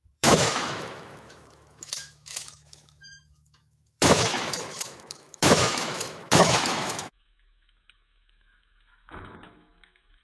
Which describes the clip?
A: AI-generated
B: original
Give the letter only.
A